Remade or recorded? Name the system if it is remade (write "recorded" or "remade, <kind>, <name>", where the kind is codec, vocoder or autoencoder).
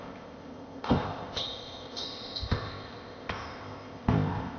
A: remade, codec, ZipCodec